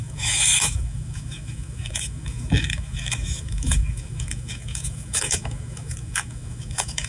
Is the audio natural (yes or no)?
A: no